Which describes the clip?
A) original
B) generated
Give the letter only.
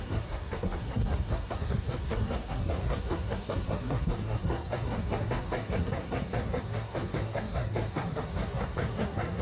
B